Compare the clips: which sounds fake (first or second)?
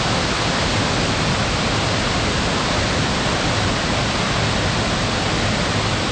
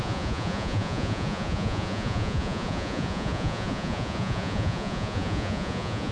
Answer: second